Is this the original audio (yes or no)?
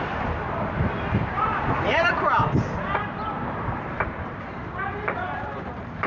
no